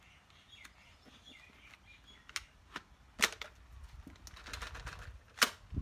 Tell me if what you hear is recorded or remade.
recorded